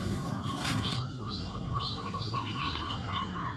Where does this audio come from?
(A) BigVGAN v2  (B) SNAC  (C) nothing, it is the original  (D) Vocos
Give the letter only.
B